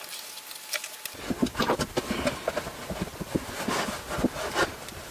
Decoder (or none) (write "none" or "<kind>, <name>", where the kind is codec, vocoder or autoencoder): none